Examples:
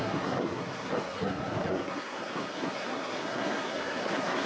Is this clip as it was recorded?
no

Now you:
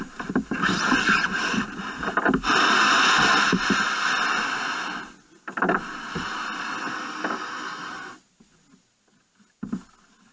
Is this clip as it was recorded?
yes